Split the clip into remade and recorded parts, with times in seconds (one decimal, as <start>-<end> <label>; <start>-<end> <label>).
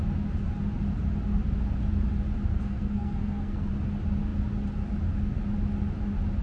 0.0-2.5 recorded; 2.5-3.7 remade; 3.7-6.4 recorded